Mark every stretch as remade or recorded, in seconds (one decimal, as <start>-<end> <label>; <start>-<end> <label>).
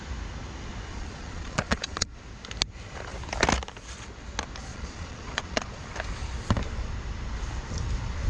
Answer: 0.0-0.9 recorded; 0.9-2.2 remade; 2.2-4.7 recorded; 4.7-5.8 remade; 5.8-8.3 recorded